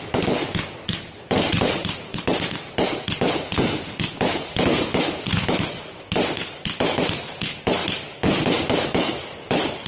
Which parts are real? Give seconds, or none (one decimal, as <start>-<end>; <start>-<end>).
0.0-9.9